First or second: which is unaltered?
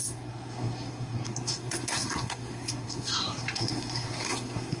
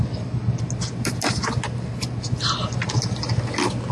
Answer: second